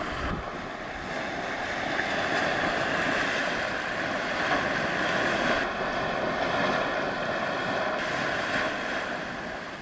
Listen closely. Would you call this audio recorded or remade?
recorded